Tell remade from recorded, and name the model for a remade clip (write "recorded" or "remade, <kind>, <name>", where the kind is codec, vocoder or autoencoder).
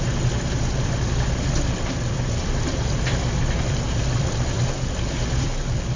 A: recorded